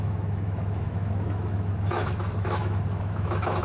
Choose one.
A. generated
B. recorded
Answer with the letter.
A